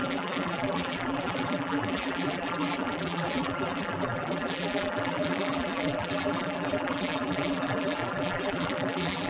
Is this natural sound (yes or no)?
no